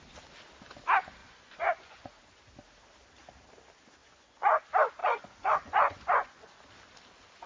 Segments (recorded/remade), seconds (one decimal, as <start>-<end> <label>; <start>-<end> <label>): 0.0-1.2 recorded; 1.2-2.2 remade; 2.2-4.0 recorded; 4.0-4.6 remade; 4.6-5.0 recorded; 5.0-6.5 remade; 6.5-7.5 recorded